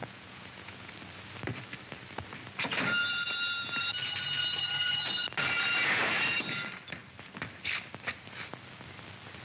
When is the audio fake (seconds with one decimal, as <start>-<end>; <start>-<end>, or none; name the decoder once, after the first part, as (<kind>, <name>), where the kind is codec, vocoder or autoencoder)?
0.0-0.9 (vocoder, Vocos)